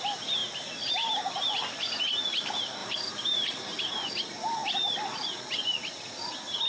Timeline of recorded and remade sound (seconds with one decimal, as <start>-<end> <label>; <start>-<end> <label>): 0.0-0.4 recorded; 0.4-1.5 remade; 1.5-2.8 recorded; 2.8-3.8 remade; 3.8-6.7 recorded